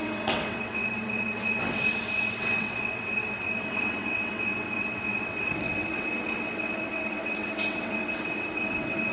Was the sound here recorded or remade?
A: remade